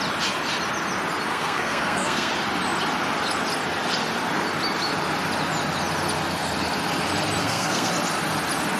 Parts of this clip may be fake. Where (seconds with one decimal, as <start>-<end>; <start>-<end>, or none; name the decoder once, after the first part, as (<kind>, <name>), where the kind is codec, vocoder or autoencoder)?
1.3-2.3 (codec, SNAC); 7.4-7.9

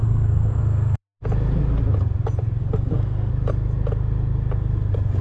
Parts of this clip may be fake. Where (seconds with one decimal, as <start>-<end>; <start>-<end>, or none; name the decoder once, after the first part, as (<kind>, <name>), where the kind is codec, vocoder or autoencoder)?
0.0-1.0 (codec, SNAC); 2.6-3.3

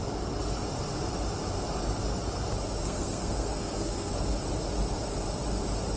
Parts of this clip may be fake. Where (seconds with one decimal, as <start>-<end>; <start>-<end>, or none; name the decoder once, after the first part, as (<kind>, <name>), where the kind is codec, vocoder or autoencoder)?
2.8-4.1 (codec, SNAC)

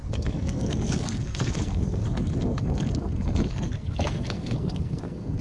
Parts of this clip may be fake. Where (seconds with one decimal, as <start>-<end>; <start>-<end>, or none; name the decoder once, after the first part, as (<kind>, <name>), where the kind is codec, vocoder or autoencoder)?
0.0-5.4 (codec, SNAC)